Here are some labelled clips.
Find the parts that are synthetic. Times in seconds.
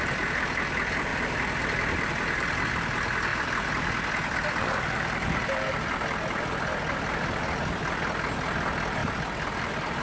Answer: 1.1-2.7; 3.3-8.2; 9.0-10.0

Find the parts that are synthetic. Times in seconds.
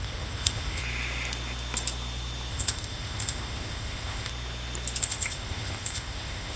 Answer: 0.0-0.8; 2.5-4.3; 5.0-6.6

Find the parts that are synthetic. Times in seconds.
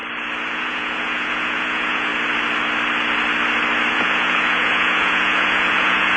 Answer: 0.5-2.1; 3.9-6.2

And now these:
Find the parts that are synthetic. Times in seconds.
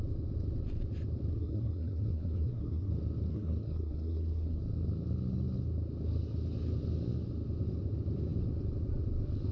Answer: 1.3-2.9; 3.3-4.6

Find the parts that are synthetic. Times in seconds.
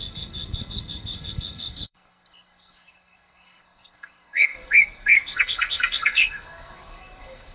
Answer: 0.0-7.5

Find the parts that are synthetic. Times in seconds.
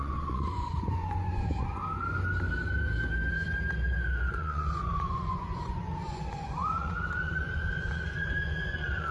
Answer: 0.0-1.8; 4.3-9.1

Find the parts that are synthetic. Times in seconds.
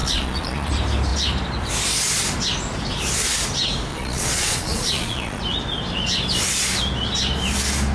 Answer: 0.0-0.7; 3.9-5.4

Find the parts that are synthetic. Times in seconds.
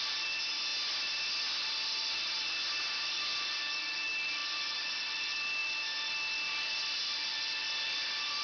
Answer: 0.0-0.7; 1.4-8.4